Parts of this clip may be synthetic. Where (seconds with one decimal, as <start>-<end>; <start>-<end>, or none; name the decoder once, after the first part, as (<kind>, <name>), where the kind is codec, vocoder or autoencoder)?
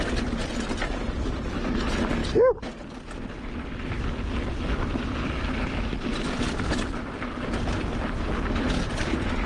none